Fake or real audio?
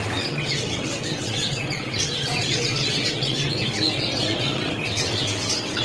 fake